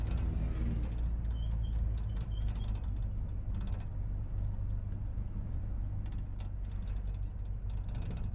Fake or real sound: real